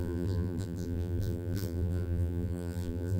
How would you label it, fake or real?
fake